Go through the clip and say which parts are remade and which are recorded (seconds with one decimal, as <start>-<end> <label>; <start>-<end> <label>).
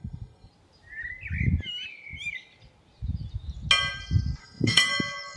0.0-0.5 remade; 0.5-4.4 recorded; 4.4-4.9 remade; 4.9-5.4 recorded